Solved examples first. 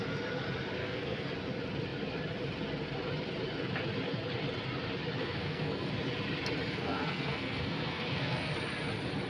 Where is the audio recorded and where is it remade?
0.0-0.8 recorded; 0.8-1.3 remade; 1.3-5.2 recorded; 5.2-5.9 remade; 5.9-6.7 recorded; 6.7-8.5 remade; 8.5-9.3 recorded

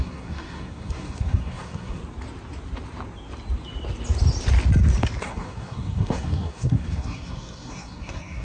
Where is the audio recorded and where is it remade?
0.0-2.0 remade; 2.0-5.2 recorded; 5.2-8.4 remade

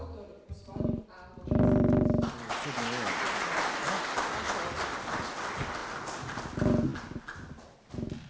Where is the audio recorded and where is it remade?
0.0-8.3 recorded

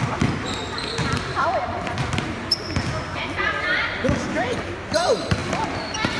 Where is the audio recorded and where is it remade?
0.0-6.2 recorded

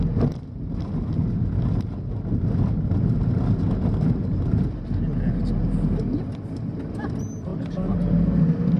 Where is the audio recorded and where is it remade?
0.0-8.8 recorded

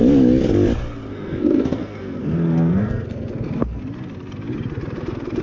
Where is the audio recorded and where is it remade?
0.0-1.1 recorded; 1.1-3.8 remade; 3.8-5.4 recorded

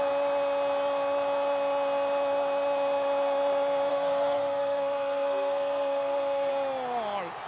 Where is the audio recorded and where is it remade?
0.0-3.9 recorded; 3.9-6.5 remade; 6.5-7.5 recorded

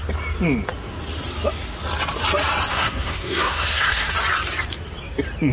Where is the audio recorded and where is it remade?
0.0-2.7 recorded; 2.7-4.1 remade; 4.1-5.5 recorded